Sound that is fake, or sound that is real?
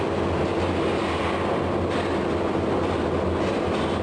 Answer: real